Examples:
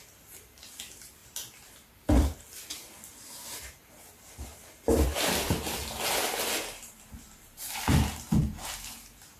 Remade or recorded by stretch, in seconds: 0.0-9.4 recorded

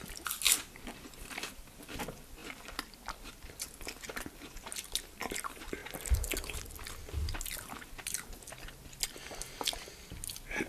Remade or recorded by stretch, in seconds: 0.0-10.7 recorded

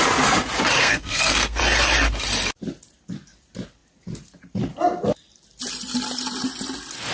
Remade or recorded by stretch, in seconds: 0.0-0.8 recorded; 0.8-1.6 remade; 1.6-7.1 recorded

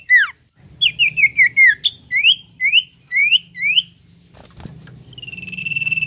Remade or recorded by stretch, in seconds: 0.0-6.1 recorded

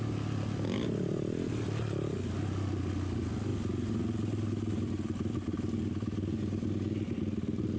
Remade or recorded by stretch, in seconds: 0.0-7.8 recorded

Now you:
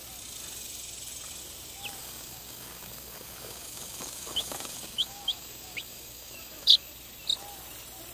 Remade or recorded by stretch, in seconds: 0.0-2.0 recorded; 2.0-6.9 remade; 6.9-8.1 recorded